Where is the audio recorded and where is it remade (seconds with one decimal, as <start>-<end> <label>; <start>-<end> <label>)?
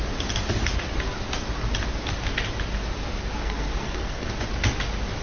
0.0-3.4 recorded; 3.4-4.3 remade; 4.3-5.2 recorded